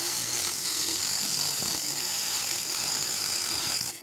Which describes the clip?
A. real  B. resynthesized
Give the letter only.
B